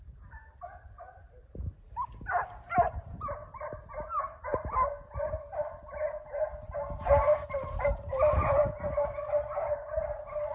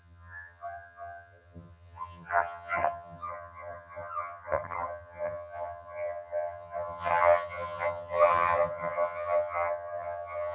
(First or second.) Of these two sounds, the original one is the first